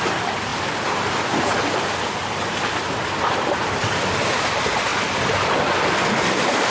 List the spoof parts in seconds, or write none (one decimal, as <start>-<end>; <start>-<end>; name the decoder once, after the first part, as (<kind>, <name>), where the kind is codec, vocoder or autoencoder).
0.5-4.5 (vocoder, BigVGAN v2)